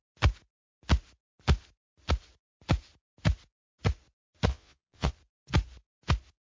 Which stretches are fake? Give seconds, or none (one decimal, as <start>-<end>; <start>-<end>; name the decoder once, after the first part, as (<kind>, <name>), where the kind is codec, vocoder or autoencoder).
4.5-5.1 (vocoder, Vocos)